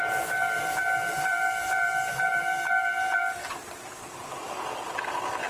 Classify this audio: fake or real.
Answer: real